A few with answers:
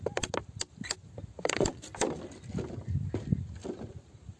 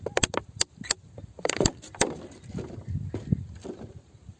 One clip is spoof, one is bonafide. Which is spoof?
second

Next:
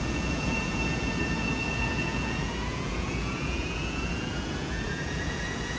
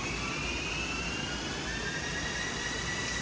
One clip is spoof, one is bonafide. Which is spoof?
first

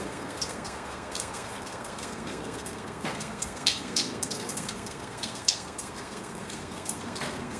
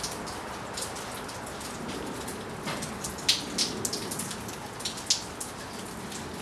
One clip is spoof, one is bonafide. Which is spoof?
first